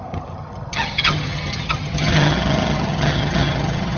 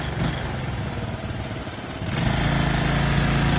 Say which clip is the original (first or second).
second